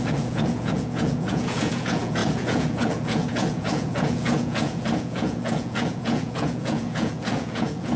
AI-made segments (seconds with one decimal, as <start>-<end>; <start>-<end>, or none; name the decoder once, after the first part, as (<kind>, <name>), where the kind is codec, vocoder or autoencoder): 0.0-8.0 (vocoder, Vocos)